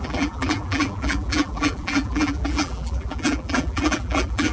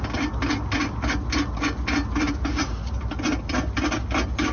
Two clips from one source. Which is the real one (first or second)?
second